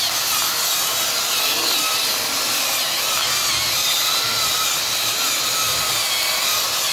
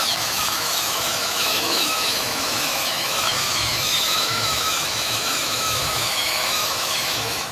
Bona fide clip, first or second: first